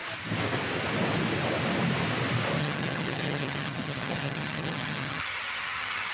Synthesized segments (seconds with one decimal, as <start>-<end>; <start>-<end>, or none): 2.6-6.1

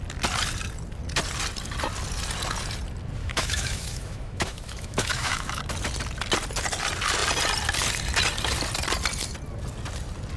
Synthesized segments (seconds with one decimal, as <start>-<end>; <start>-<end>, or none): 3.2-5.6

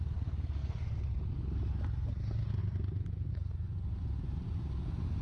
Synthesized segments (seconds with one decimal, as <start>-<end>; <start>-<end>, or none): 2.6-3.3